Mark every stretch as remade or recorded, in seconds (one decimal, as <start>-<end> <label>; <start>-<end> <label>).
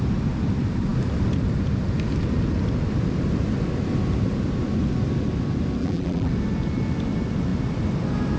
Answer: 0.0-5.8 recorded; 5.8-6.3 remade; 6.3-8.4 recorded